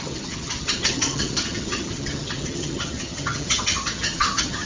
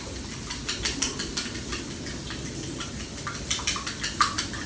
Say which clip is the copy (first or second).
first